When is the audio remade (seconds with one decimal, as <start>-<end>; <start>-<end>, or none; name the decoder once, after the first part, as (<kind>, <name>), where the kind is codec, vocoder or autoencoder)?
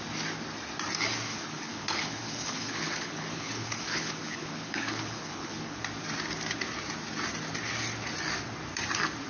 1.3-5.8 (codec, HILCodec)